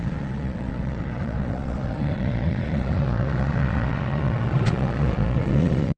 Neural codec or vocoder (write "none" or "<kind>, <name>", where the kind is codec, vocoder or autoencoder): vocoder, Vocos